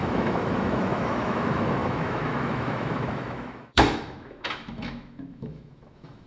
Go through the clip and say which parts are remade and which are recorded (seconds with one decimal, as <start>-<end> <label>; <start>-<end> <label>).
0.0-6.3 remade